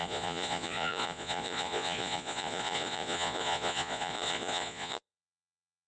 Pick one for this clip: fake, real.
fake